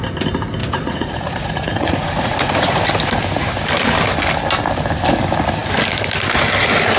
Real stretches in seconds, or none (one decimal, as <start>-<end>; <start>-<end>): 0.0-0.6; 2.8-7.0